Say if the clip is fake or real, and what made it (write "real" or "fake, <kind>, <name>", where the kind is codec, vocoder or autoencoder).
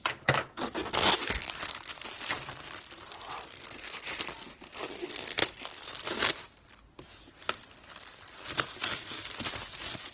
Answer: real